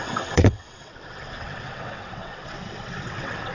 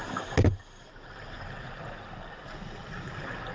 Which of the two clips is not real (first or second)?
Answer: first